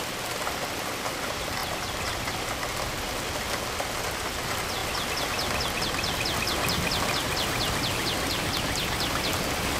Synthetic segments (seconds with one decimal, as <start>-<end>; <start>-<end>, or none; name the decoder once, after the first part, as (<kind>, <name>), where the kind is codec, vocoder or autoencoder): none